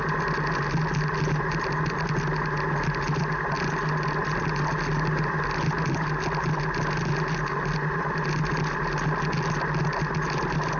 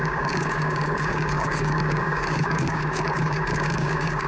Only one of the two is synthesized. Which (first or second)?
second